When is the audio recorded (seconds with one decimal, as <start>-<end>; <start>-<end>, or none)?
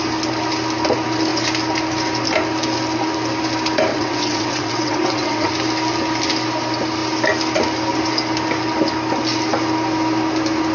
0.0-3.9; 5.5-10.7